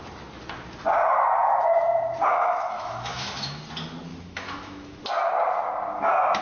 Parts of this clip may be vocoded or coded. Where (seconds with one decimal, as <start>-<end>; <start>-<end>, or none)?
2.3-3.6; 4.1-5.0